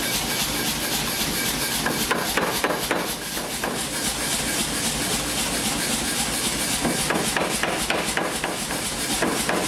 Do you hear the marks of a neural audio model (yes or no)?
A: no